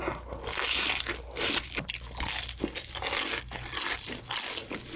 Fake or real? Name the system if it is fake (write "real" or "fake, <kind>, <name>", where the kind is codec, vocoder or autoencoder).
real